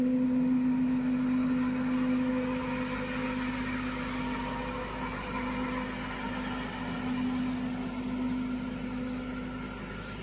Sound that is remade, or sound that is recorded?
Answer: recorded